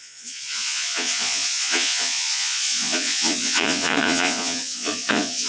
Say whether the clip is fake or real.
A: fake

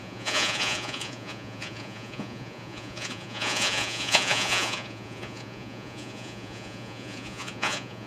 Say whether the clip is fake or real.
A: fake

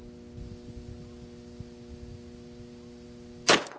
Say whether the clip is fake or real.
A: real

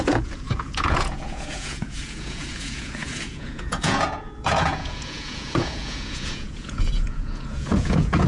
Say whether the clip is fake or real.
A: fake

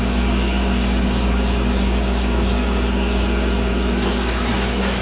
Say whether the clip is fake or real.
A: fake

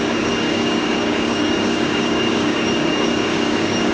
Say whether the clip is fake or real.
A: fake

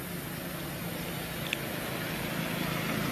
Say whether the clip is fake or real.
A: real